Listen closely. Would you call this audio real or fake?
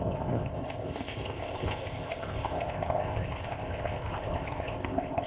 fake